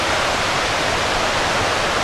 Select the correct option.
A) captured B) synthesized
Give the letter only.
A